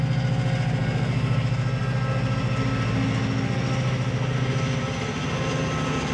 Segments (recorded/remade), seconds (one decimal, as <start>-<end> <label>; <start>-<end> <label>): 0.0-6.1 recorded